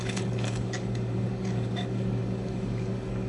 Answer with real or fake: fake